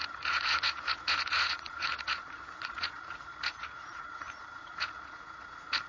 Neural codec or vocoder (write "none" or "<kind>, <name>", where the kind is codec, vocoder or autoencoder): vocoder, Vocos